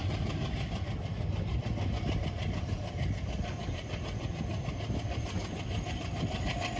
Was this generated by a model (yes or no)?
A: no